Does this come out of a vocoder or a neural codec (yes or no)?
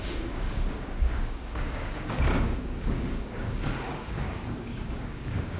yes